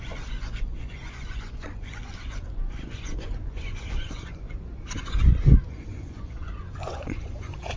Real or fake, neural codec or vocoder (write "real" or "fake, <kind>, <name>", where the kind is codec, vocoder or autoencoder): fake, vocoder, Vocos